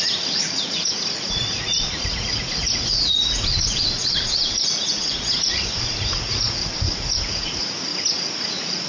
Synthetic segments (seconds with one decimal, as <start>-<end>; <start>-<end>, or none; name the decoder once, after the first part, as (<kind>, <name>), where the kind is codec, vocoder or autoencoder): 0.0-7.9 (vocoder, Vocos); 8.5-8.9